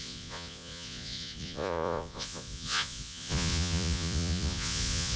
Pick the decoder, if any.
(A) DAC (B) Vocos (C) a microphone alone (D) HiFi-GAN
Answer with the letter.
B